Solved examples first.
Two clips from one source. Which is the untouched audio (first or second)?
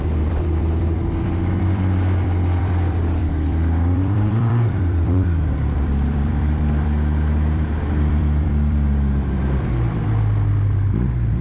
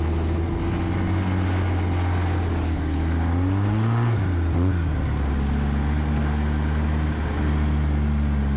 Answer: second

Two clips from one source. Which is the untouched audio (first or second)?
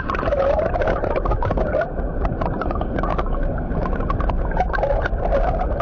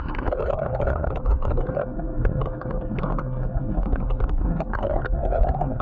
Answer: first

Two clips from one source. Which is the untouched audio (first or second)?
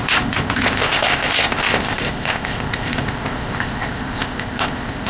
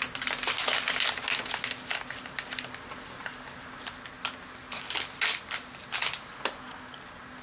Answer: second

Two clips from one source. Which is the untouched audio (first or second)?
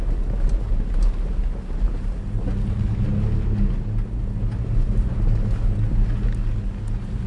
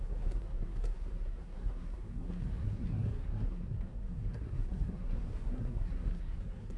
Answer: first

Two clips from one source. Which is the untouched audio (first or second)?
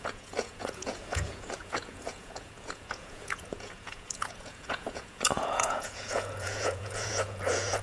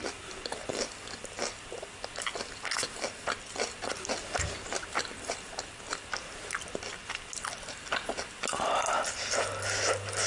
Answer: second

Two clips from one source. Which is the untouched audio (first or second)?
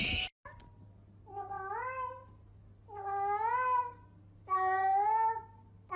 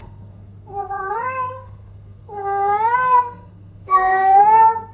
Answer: first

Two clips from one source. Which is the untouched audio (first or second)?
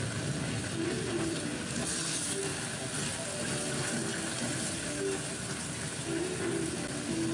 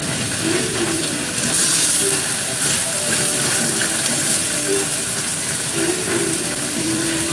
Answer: first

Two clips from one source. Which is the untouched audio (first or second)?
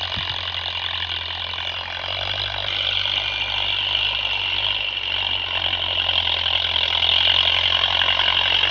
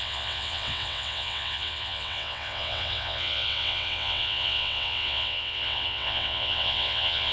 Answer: first